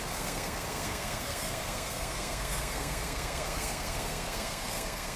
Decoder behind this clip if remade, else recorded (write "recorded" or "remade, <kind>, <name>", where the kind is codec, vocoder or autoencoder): remade, codec, SNAC